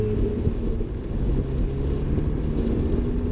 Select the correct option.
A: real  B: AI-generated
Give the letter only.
A